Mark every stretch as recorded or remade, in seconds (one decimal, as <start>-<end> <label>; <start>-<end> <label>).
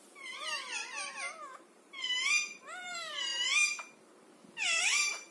0.0-3.3 remade; 3.3-4.8 recorded; 4.8-5.3 remade